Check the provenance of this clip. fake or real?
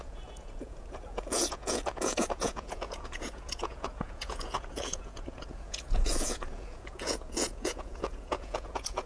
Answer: fake